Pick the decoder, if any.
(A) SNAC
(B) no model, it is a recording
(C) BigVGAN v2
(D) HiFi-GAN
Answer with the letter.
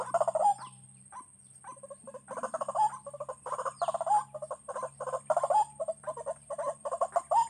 B